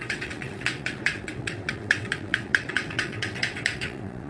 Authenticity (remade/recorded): remade